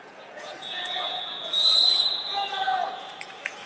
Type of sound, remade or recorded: remade